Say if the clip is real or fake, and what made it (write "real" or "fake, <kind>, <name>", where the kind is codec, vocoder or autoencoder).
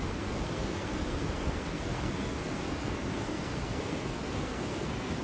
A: fake, codec, SNAC